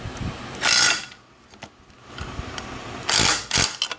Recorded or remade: recorded